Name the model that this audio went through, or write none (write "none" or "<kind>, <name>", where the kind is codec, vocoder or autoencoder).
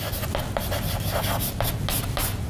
none